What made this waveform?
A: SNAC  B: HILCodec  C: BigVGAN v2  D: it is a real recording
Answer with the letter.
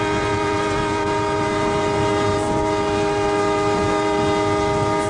D